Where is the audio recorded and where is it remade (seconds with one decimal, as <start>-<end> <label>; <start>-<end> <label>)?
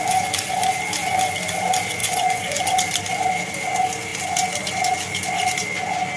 0.0-2.0 recorded; 2.0-2.6 remade; 2.6-6.2 recorded